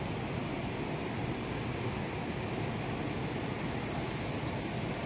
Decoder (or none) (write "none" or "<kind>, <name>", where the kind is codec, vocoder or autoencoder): none